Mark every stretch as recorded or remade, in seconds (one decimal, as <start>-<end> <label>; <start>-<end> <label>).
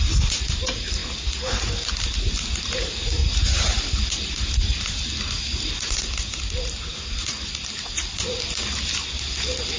0.0-9.8 recorded